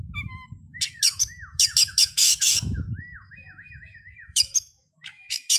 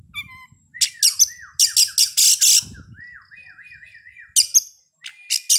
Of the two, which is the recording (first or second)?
second